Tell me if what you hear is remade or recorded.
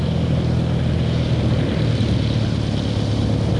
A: recorded